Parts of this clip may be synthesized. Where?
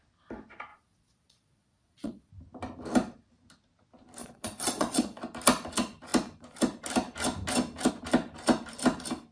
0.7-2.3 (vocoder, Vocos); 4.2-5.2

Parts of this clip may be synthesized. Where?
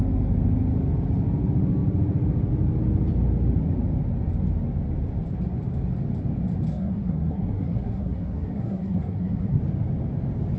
6.7-9.6 (codec, SNAC)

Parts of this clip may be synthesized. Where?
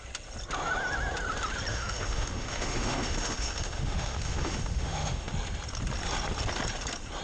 1.7-5.3 (autoencoder, DAC-VAE)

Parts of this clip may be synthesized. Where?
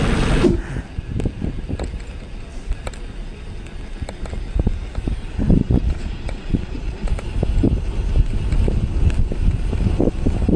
5.6-7.1 (vocoder, Vocos)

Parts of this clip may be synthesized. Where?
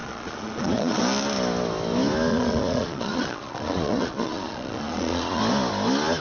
0.0-1.0 (vocoder, Vocos); 2.3-5.4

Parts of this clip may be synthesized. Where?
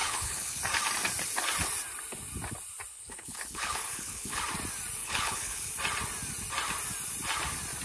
0.0-0.6 (codec, HILCodec); 2.9-4.4; 5.0-5.7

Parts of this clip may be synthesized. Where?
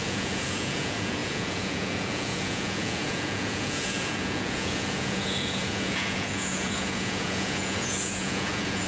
0.0-8.9 (vocoder, Vocos)